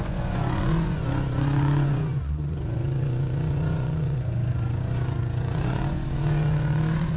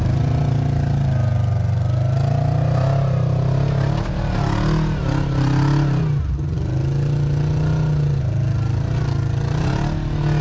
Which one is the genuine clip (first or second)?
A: second